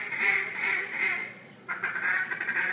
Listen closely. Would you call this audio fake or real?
fake